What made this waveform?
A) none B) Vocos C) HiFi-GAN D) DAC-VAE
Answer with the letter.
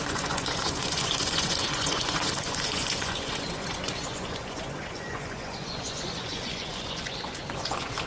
B